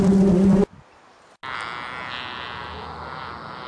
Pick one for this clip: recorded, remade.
recorded